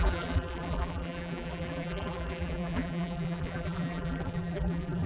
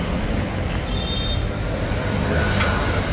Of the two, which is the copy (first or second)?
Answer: first